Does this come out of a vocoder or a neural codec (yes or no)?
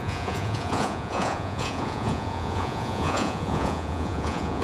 yes